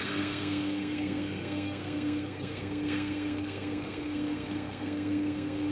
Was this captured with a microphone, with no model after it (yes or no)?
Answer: no